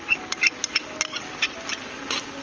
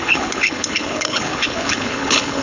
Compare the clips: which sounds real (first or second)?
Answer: first